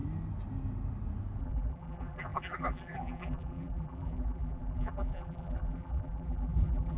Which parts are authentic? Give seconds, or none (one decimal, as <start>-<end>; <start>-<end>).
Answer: 0.0-1.4